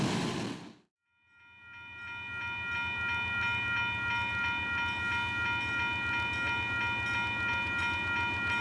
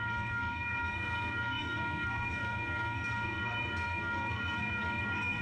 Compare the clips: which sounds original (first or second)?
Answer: first